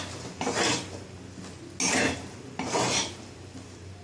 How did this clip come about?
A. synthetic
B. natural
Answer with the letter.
B